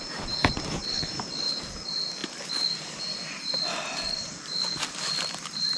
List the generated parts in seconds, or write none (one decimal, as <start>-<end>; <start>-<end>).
none